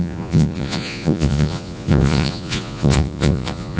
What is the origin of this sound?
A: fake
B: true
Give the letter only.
A